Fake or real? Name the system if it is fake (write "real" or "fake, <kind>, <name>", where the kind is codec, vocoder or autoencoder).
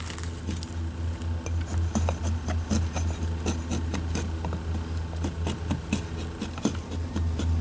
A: real